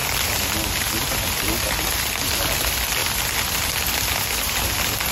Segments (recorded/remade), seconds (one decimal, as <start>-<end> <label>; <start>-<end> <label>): 0.0-5.1 recorded